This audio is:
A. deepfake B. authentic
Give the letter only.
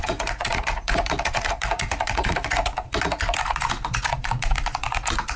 A